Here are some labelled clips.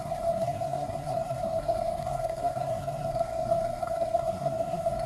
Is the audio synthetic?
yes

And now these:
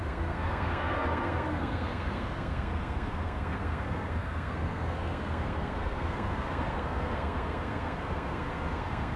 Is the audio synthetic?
yes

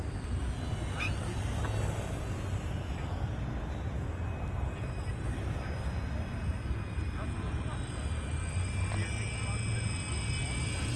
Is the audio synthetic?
no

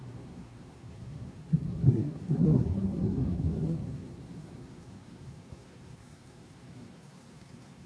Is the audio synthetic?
yes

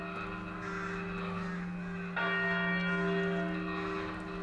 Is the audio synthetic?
no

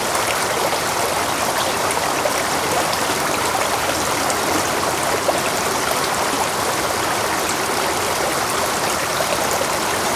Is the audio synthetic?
no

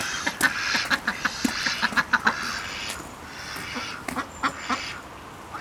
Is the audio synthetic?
no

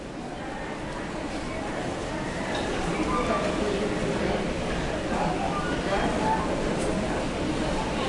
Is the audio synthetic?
no